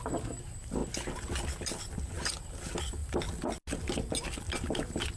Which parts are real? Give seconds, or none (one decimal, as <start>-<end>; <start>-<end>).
0.0-5.2